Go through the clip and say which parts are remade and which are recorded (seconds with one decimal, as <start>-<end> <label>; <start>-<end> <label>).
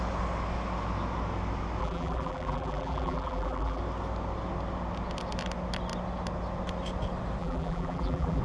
0.0-1.8 recorded; 1.8-3.8 remade; 3.8-7.4 recorded; 7.4-8.4 remade